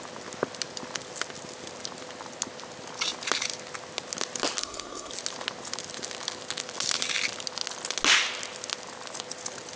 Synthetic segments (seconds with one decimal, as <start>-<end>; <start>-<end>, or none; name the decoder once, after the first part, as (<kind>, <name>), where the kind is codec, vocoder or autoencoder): 4.6-5.1 (codec, SNAC)